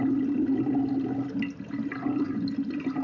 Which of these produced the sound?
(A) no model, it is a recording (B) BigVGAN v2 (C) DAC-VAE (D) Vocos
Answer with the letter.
A